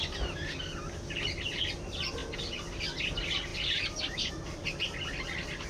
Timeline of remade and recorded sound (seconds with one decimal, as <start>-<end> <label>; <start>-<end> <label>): 0.0-5.7 recorded